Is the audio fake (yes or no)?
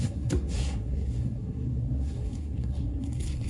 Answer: yes